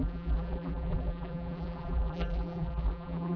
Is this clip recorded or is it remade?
remade